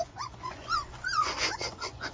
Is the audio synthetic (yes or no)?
yes